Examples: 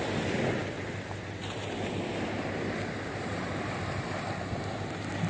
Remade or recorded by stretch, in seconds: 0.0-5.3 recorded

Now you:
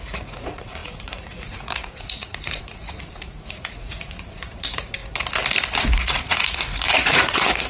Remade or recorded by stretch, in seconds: 0.0-5.0 remade; 5.0-5.8 recorded; 5.8-7.7 remade

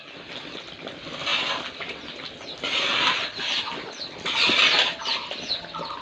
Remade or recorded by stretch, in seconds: 0.0-6.0 recorded

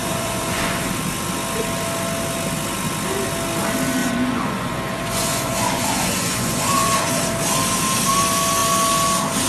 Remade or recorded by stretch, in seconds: 0.0-0.9 remade; 0.9-4.0 recorded; 4.0-7.1 remade; 7.1-9.5 recorded